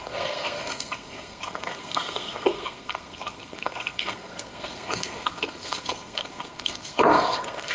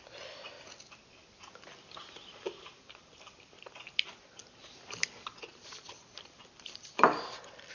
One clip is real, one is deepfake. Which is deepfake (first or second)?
first